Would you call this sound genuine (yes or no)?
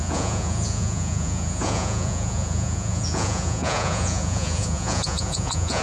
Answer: no